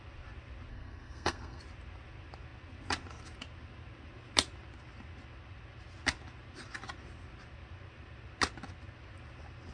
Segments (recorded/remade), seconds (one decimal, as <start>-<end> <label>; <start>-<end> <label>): 0.0-0.7 recorded; 0.7-1.6 remade; 1.6-9.7 recorded